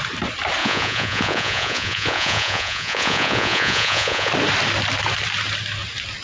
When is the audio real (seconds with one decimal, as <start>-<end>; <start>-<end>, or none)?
0.0-0.6; 4.3-6.2